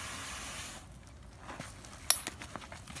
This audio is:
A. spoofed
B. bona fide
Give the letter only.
B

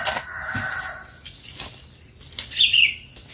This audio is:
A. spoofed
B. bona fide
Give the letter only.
B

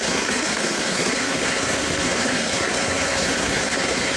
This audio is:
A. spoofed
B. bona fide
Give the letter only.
A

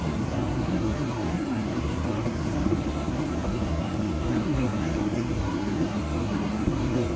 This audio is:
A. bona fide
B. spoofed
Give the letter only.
B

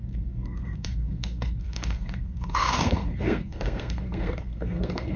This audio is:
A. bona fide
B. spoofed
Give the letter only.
B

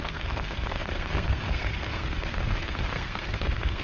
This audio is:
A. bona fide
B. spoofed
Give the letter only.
B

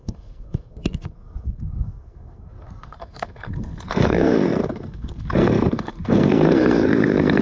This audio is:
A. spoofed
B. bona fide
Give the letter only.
A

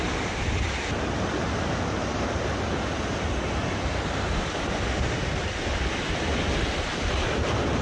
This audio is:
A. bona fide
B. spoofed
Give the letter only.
A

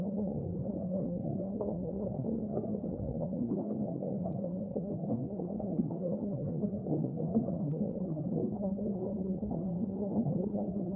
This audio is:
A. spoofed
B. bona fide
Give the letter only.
A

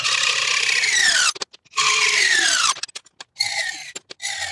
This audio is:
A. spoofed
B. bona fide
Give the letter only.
B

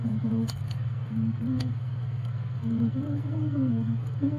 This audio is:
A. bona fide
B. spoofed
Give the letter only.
B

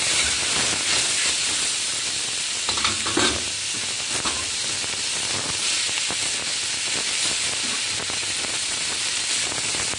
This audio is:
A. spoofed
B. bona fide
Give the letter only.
B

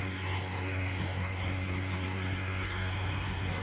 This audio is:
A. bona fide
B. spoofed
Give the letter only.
B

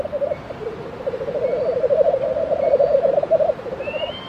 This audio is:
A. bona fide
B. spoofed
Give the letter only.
A